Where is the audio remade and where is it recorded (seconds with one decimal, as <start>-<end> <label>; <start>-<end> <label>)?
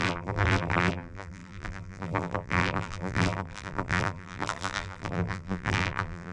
0.0-6.3 remade